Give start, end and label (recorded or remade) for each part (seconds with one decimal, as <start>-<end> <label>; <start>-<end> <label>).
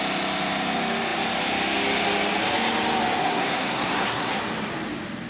0.0-3.2 recorded; 3.2-4.4 remade; 4.4-5.3 recorded